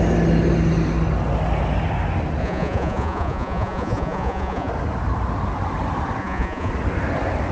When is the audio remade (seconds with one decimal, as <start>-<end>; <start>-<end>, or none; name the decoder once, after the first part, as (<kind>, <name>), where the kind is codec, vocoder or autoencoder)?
2.4-4.7 (vocoder, Vocos); 6.2-6.7